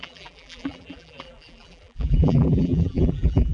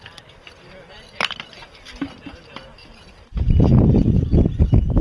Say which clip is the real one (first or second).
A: second